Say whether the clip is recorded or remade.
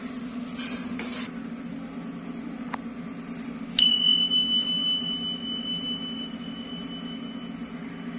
recorded